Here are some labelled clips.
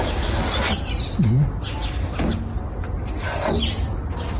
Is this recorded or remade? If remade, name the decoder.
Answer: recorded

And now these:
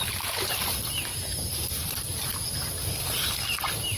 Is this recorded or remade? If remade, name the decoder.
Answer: remade, vocoder, BigVGAN v2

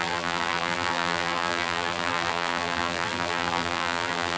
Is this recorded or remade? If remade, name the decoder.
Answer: remade, vocoder, BigVGAN v2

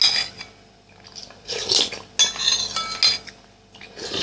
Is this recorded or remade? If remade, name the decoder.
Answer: recorded